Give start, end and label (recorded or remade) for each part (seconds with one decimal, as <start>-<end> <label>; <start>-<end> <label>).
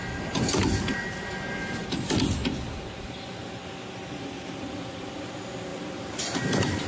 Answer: 0.0-1.8 remade; 1.8-4.1 recorded; 4.1-6.9 remade